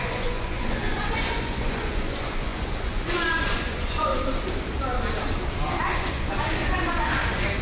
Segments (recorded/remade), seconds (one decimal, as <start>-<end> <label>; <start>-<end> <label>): 0.0-4.1 remade; 4.1-5.8 recorded; 5.8-7.6 remade